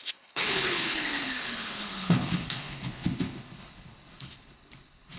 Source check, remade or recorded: remade